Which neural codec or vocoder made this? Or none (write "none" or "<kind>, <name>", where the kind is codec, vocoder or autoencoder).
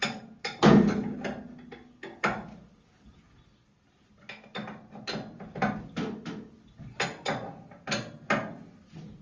none